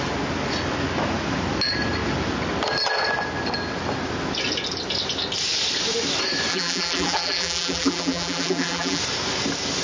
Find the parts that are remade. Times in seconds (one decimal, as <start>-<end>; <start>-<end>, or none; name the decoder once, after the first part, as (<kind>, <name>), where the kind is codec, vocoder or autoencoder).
6.5-9.0 (vocoder, BigVGAN v2)